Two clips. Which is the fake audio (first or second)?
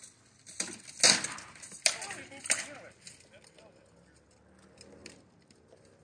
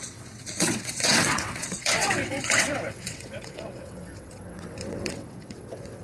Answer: second